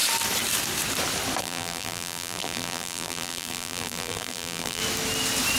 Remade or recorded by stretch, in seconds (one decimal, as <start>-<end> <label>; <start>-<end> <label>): 0.0-1.4 recorded; 1.4-4.8 remade; 4.8-5.6 recorded